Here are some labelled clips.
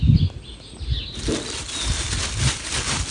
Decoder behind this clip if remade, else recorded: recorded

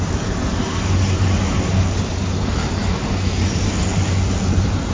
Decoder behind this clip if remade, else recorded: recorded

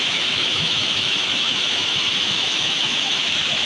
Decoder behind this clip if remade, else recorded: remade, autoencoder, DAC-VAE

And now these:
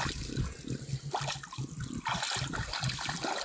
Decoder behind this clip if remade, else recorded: recorded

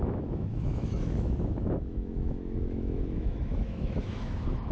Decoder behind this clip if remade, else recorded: remade, autoencoder, DAC-VAE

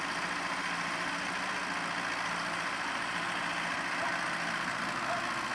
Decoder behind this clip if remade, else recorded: recorded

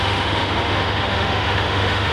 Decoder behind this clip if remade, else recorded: remade, autoencoder, DAC-VAE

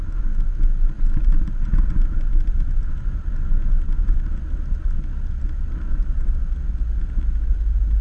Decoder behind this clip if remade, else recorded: recorded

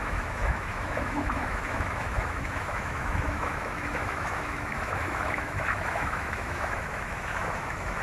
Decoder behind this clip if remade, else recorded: remade, autoencoder, DAC-VAE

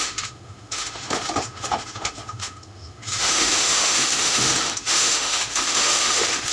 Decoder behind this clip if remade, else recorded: remade, autoencoder, DAC-VAE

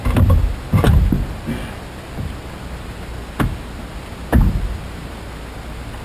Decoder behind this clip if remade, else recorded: recorded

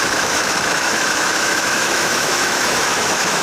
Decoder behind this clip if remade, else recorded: remade, autoencoder, DAC-VAE